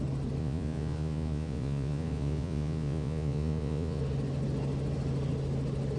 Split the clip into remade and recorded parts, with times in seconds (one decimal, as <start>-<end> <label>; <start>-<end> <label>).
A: 0.0-0.4 recorded; 0.4-4.0 remade; 4.0-6.0 recorded